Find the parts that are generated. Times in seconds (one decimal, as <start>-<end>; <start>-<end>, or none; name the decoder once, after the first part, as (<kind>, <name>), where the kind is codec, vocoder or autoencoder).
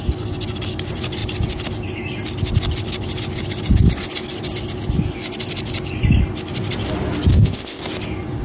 7.3-7.8 (codec, ZipCodec)